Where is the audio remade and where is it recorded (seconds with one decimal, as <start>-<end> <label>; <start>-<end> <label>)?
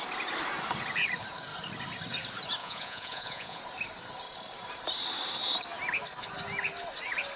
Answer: 0.0-2.6 recorded; 2.6-3.6 remade; 3.6-7.4 recorded